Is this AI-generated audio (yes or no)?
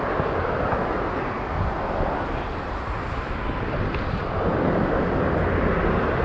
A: no